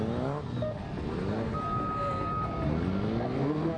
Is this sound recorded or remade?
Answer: recorded